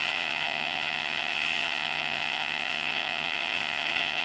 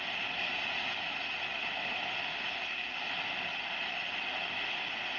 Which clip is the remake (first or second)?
first